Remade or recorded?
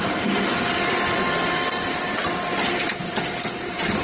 recorded